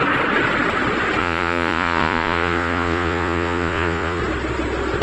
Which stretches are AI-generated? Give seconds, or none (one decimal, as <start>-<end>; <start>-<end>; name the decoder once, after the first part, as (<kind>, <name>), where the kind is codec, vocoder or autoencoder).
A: 1.2-4.2 (vocoder, Vocos)